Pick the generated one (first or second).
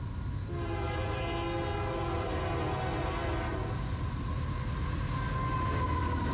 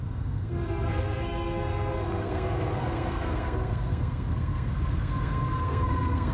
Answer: second